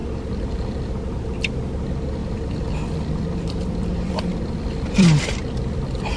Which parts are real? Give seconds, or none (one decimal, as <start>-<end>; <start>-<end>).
0.0-2.2